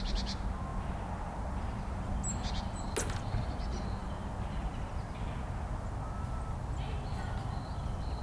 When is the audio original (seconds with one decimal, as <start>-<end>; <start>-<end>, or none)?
0.0-8.2